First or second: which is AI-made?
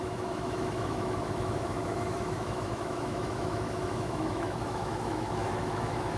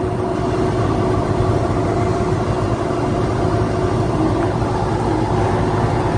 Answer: first